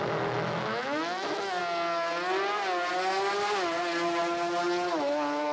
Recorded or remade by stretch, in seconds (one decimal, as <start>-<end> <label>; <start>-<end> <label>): 0.0-1.6 remade; 1.6-4.9 recorded; 4.9-5.5 remade